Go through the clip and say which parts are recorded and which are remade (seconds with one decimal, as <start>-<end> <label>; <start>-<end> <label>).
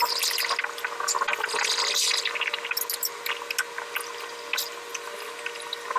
0.0-6.0 recorded